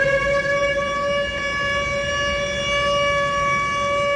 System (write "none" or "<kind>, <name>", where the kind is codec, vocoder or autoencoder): none